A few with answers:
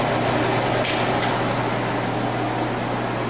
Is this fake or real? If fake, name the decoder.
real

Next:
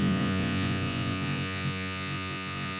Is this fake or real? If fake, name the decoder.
fake, vocoder, Vocos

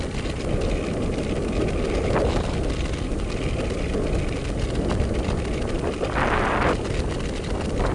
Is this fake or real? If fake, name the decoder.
real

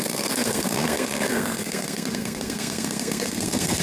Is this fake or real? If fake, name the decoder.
fake, codec, SNAC